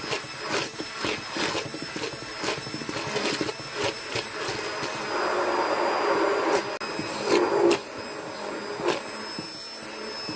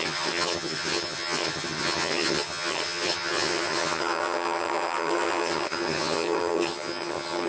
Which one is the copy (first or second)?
second